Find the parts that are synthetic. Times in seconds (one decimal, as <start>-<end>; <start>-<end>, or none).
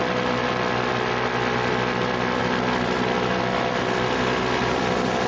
none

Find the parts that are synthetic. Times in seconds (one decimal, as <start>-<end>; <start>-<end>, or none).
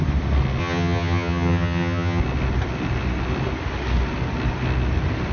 0.6-2.2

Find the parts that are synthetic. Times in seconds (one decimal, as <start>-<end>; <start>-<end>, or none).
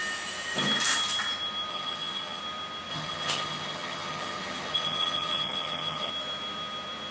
1.7-2.4; 2.9-6.1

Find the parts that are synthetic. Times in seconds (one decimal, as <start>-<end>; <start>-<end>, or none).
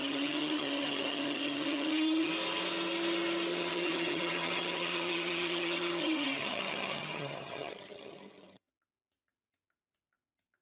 0.0-2.3; 3.5-8.7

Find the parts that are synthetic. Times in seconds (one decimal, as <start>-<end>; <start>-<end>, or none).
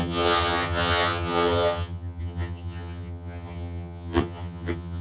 0.0-5.0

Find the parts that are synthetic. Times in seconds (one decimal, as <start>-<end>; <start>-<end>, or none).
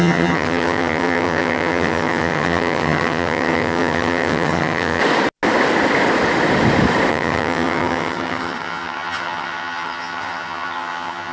0.0-5.0; 7.1-11.3